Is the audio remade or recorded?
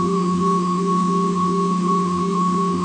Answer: remade